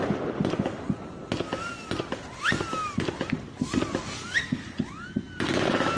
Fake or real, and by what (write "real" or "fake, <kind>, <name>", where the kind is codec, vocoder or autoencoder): real